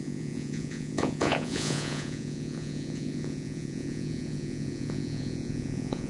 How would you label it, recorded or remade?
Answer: remade